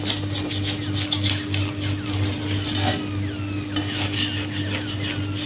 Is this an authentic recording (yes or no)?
yes